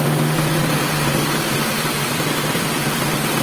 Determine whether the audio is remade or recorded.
recorded